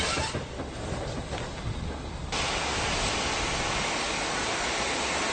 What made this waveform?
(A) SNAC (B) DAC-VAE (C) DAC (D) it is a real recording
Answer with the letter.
D